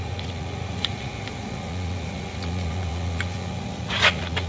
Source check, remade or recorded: remade